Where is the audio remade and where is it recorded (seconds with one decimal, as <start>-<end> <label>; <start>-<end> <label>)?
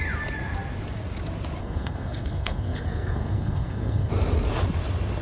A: 0.0-1.6 recorded; 1.6-4.1 remade; 4.1-5.2 recorded